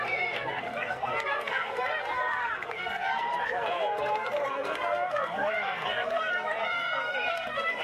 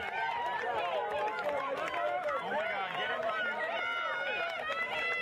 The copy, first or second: first